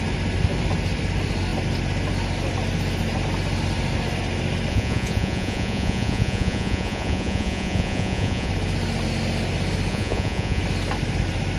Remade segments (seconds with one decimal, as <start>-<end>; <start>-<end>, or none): 4.7-8.5; 9.9-10.6